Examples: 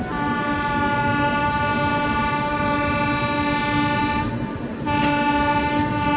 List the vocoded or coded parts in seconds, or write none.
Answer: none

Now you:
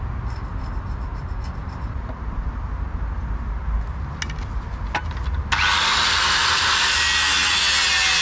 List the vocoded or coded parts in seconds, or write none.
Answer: 1.6-2.1 (vocoder, BigVGAN v2)

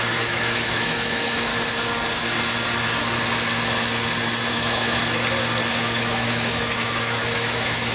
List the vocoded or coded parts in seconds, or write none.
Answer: 0.0-1.5 (autoencoder, DAC-VAE); 4.5-5.0; 5.7-7.9

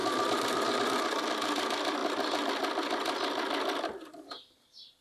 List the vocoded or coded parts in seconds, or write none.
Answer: none

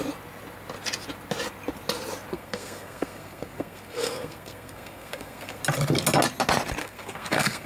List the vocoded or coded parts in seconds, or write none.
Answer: 2.3-5.6 (codec, SNAC); 6.8-7.7

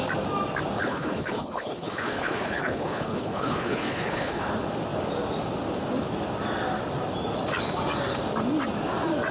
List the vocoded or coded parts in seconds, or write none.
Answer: 0.8-4.5 (codec, HILCodec)

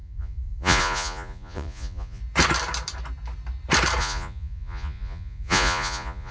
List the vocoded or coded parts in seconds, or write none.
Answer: 0.0-2.2 (vocoder, Vocos); 4.0-6.3